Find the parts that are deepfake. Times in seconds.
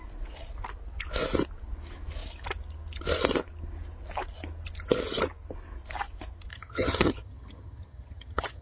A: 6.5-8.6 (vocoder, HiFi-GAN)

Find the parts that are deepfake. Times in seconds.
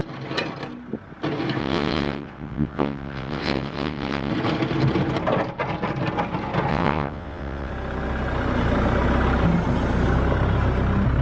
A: 1.6-4.3 (vocoder, WaveNeXt); 6.7-7.7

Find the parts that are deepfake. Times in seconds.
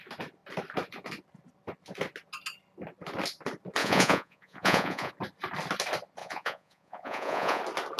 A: 3.8-5.1 (vocoder, Vocos); 6.2-7.6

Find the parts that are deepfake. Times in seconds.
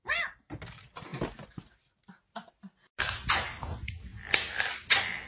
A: none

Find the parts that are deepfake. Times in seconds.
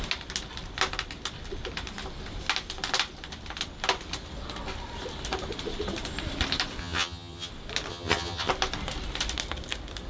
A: 6.8-7.5 (vocoder, HiFi-GAN); 7.9-8.5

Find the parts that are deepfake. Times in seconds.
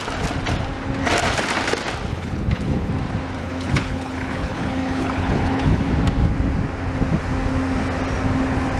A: 2.1-2.9 (codec, HILCodec); 3.4-5.8